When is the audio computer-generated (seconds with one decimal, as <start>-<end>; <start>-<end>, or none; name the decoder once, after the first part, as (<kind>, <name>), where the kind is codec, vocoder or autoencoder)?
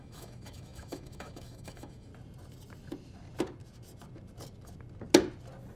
0.0-2.1 (autoencoder, DAC-VAE)